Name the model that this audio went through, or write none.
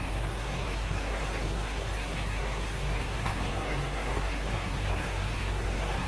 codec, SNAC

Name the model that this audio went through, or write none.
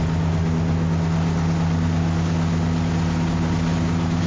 none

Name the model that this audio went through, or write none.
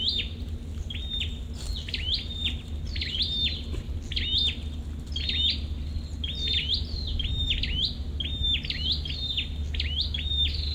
none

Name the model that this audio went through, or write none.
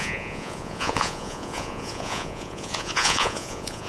vocoder, Vocos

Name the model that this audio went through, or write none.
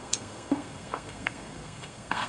codec, SNAC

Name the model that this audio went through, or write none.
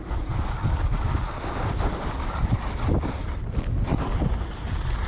none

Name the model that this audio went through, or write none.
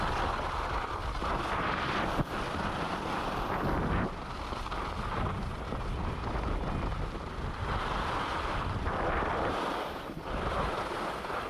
none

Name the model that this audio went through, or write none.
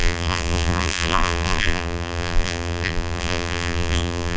vocoder, BigVGAN v2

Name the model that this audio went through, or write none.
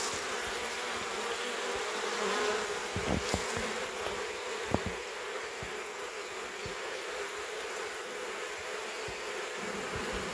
none